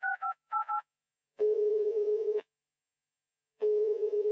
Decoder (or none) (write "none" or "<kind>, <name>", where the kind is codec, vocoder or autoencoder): vocoder, Vocos